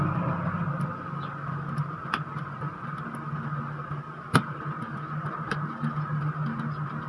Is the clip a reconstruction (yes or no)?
no